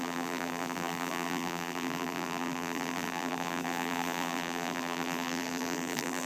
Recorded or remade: remade